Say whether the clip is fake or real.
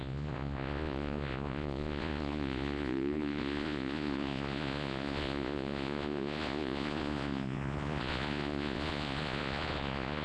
fake